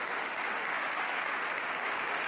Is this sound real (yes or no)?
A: no